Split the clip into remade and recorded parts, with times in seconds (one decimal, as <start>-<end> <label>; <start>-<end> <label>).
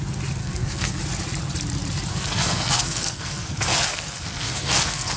0.0-0.4 recorded; 0.4-1.0 remade; 1.0-2.1 recorded; 2.1-5.2 remade